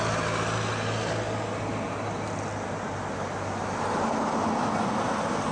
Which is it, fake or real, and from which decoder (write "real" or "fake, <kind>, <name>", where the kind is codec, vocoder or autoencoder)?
real